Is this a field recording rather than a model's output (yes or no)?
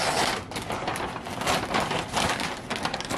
yes